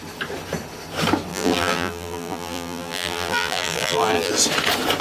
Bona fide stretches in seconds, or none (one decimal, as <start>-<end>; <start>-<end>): 0.0-1.3; 4.3-5.0